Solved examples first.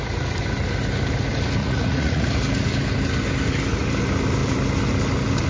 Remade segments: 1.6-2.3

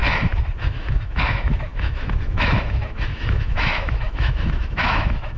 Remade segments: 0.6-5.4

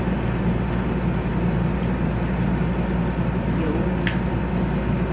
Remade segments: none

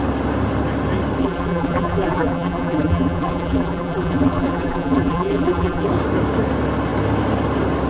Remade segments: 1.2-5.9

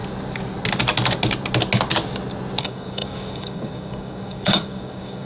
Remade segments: 2.6-5.3